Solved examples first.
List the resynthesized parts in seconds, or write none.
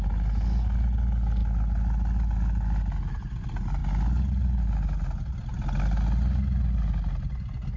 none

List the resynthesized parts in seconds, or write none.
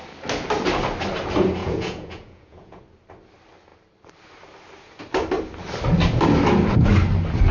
1.6-2.8 (vocoder, Vocos)